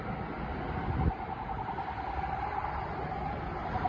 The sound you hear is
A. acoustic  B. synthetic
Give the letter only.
A